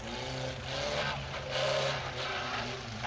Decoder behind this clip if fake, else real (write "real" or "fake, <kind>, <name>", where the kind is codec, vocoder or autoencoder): real